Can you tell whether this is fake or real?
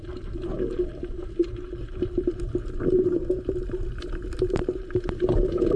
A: fake